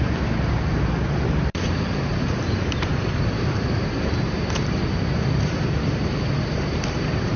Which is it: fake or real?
fake